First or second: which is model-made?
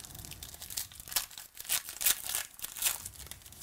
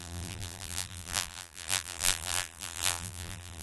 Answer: second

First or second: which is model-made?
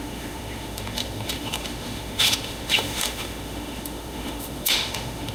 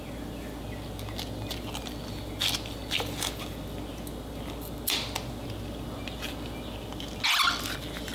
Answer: first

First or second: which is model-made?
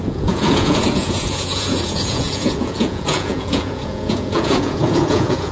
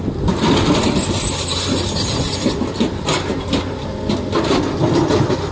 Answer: first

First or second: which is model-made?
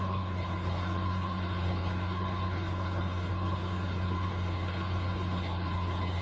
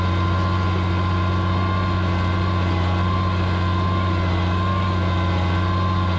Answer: first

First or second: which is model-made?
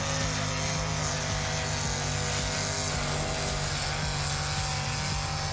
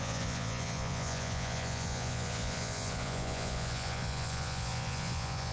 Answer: second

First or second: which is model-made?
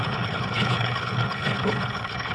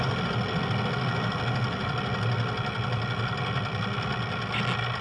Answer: first